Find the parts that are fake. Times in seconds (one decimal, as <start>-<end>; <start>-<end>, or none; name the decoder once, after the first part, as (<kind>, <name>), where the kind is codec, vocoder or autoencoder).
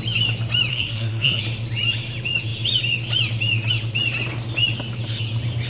0.7-1.4 (codec, SNAC)